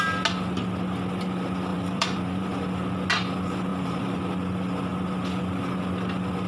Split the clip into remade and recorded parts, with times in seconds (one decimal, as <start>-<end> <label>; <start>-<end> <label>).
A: 0.0-1.7 recorded; 1.7-2.6 remade; 2.6-3.7 recorded; 3.7-4.2 remade; 4.2-6.5 recorded